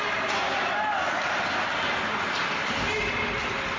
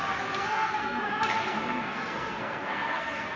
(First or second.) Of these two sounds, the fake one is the second